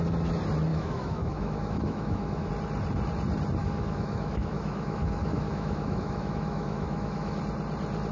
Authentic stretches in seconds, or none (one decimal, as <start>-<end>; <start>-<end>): 0.0-0.7; 2.5-3.6; 7.4-8.1